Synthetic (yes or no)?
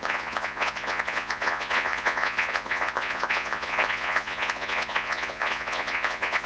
yes